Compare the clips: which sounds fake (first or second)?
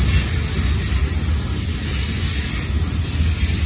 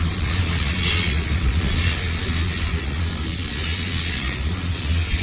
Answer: second